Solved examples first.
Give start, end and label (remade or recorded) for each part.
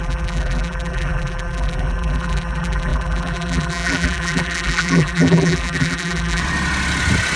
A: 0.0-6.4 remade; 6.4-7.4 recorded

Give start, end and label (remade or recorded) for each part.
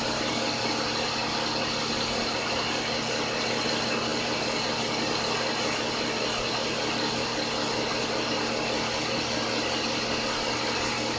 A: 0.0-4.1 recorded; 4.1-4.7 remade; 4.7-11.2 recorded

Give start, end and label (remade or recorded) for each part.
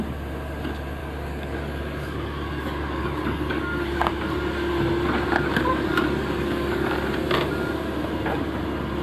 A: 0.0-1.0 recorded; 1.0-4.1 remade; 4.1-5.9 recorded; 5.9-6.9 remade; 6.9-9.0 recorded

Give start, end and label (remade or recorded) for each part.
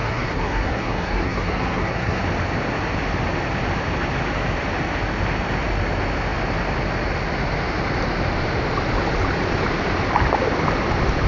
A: 0.0-2.2 remade; 2.2-11.3 recorded